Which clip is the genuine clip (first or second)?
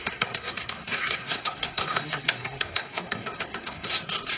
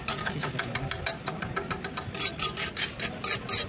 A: second